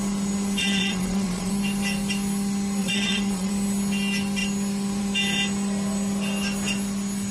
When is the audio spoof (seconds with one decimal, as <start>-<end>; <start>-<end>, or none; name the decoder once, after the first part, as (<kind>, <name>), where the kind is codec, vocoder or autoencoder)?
0.6-1.5 (vocoder, Vocos); 2.8-3.5